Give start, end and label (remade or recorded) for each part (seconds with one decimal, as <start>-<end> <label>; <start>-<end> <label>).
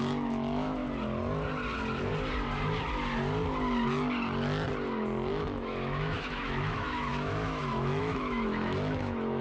0.0-0.8 remade; 0.8-5.3 recorded; 5.3-9.4 remade